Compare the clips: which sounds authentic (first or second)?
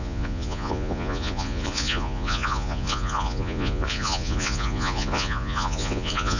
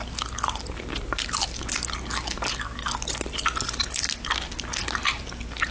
second